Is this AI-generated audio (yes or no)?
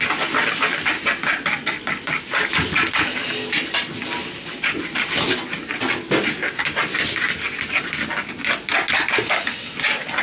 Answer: no